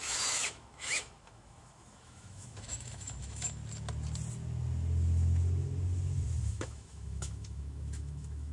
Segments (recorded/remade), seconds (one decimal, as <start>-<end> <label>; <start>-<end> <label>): 0.0-3.6 remade; 3.6-6.4 recorded; 6.4-8.5 remade